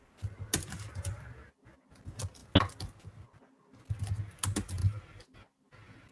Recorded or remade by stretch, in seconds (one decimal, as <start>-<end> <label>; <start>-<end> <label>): 0.0-6.1 recorded